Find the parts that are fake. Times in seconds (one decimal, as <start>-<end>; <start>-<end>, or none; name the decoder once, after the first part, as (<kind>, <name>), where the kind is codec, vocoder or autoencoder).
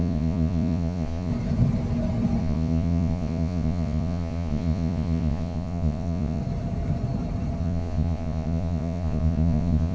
0.0-1.3 (vocoder, Vocos); 2.4-6.4; 7.6-9.9